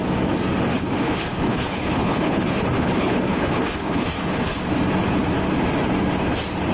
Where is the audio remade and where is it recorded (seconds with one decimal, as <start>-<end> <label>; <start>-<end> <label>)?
0.0-0.7 recorded; 0.7-4.6 remade; 4.6-6.7 recorded